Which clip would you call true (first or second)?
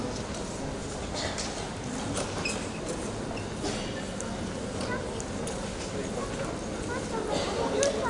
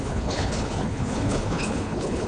first